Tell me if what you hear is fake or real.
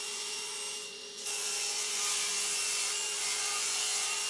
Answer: fake